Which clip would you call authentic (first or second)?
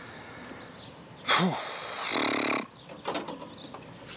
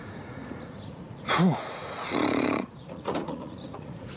first